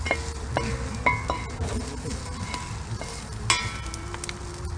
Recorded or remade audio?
recorded